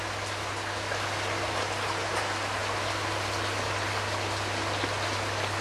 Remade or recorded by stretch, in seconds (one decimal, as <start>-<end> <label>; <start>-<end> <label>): 0.0-5.6 recorded